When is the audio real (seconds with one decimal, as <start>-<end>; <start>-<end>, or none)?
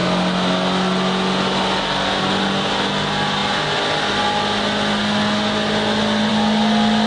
0.0-7.1